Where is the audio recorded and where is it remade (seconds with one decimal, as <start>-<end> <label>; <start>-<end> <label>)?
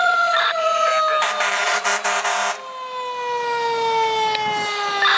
0.0-0.9 remade; 0.9-1.5 recorded; 1.5-1.9 remade; 1.9-5.2 recorded